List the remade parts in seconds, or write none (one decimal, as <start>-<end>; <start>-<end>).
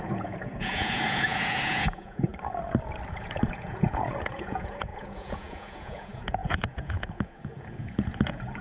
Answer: 0.0-2.3; 3.1-8.6